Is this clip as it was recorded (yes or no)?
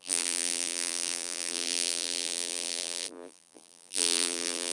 no